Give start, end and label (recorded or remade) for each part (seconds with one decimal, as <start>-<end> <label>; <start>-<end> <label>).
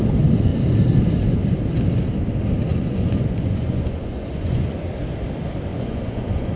0.0-2.7 recorded; 2.7-4.8 remade; 4.8-5.7 recorded; 5.7-6.6 remade